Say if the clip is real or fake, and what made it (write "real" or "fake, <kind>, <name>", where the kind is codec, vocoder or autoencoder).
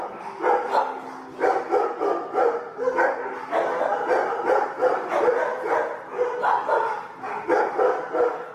real